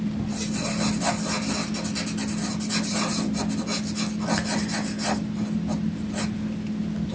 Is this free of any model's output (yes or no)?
yes